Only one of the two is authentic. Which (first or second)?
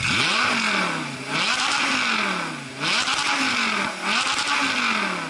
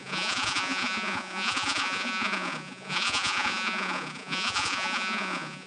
first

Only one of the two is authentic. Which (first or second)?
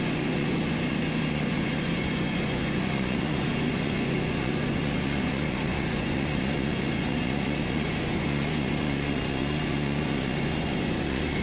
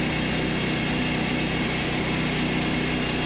second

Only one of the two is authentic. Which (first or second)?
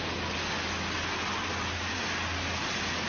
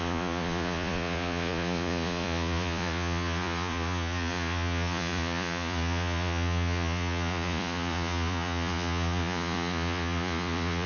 first